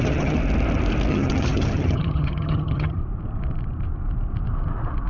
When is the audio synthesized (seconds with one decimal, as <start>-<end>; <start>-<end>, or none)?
0.0-0.4; 1.1-3.0